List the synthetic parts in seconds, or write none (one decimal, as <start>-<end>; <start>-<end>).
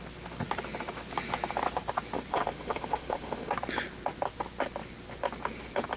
2.3-3.5